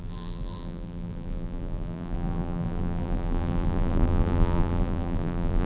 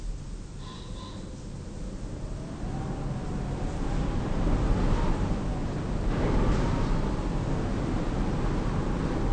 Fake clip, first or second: first